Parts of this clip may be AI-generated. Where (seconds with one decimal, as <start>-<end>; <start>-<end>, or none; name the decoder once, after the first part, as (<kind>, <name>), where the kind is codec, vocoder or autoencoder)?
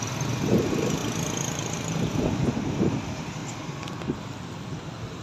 none